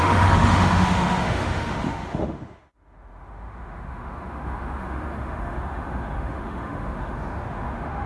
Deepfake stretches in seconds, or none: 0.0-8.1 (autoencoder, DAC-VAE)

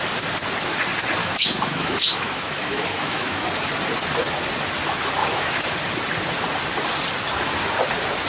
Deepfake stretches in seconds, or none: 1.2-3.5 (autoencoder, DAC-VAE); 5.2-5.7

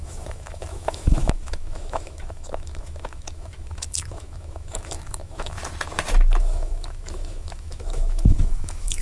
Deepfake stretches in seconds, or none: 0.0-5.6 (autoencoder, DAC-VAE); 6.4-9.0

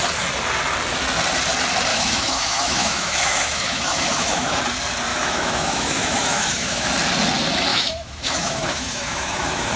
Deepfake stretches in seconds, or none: 1.9-4.6 (autoencoder, DAC-VAE); 5.1-6.9; 7.7-9.8

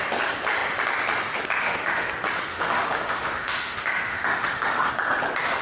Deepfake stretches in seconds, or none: 1.6-2.1 (autoencoder, DAC-VAE); 2.5-4.9

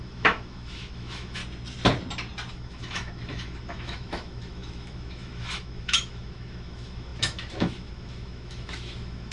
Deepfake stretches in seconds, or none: 0.0-1.4 (autoencoder, DAC-VAE); 2.5-9.3

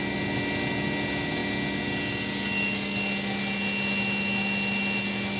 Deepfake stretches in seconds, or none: none